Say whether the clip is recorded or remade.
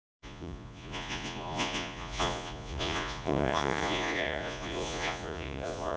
remade